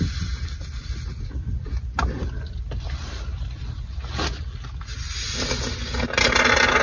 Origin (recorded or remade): recorded